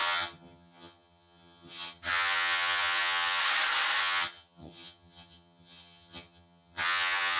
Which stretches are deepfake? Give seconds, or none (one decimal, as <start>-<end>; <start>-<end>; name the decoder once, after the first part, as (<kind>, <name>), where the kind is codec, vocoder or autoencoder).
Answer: 0.0-3.4 (vocoder, HiFi-GAN); 4.0-7.4